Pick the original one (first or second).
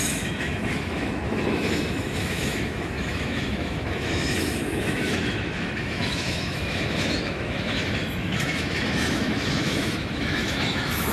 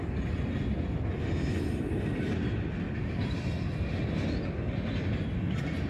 second